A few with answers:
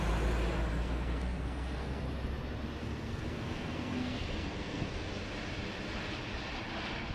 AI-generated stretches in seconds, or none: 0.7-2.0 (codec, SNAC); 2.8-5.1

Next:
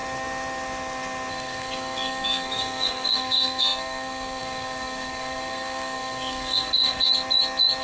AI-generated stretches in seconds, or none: 1.3-7.1 (codec, SNAC)

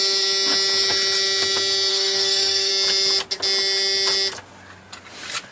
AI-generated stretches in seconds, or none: 1.9-2.7 (codec, SNAC)

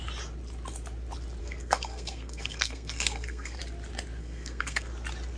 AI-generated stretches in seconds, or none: 1.4-3.6 (codec, SNAC); 4.2-4.9

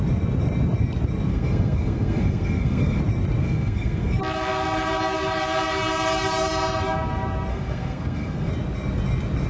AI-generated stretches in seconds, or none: 1.3-3.0 (codec, SNAC); 3.4-4.2; 7.5-8.5

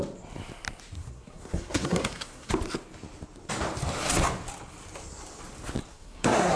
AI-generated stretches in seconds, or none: 1.0-2.5 (codec, SNAC); 5.9-6.6

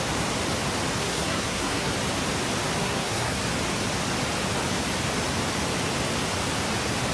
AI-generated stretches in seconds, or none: 1.0-1.9 (codec, SNAC); 2.8-3.4

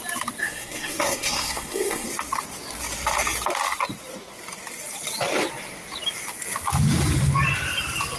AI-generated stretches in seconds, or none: 0.4-2.1 (codec, SNAC)